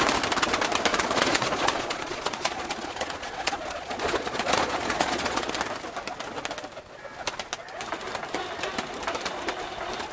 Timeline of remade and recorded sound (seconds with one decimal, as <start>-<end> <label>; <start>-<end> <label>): 0.0-0.9 recorded; 0.9-5.5 remade; 5.5-10.1 recorded